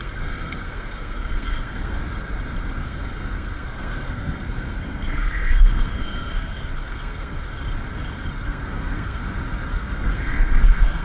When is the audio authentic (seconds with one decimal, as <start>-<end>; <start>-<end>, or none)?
2.0-2.8; 7.5-8.3; 9.2-9.7